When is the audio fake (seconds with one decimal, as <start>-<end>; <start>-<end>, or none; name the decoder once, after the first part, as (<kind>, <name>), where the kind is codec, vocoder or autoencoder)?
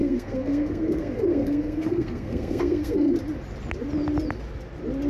0.0-3.1 (codec, SNAC)